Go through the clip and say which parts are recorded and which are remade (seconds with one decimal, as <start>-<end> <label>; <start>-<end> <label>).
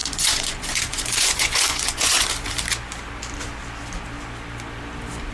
0.0-2.3 remade; 2.3-5.3 recorded